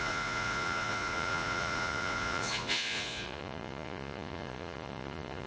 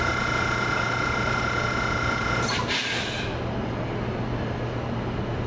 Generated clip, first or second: first